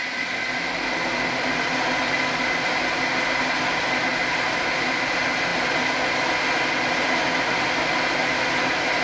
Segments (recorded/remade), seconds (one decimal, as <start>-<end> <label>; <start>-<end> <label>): 0.0-9.0 recorded